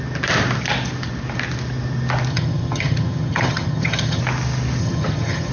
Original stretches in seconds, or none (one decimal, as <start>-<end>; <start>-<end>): 0.0-2.3; 4.2-4.8